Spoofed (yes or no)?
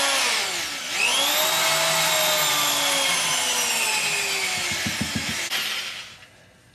no